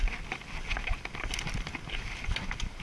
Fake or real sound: real